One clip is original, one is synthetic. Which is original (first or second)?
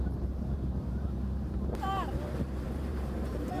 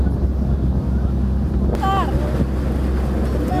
second